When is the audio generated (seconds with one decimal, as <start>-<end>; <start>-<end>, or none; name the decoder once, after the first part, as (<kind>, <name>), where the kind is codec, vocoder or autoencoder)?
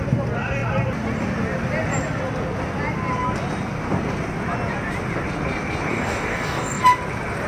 5.9-6.8 (codec, DAC)